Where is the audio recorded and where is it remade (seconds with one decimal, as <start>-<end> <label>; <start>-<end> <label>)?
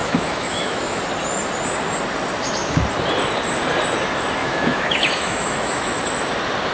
0.0-1.0 remade; 1.0-4.4 recorded; 4.4-6.0 remade; 6.0-6.7 recorded